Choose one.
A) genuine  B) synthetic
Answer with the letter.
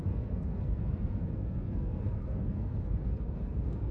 B